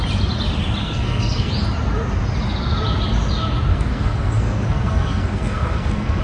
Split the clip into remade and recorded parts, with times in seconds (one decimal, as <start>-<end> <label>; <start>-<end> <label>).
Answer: 0.0-0.8 recorded; 0.8-1.5 remade; 1.5-3.7 recorded; 3.7-6.2 remade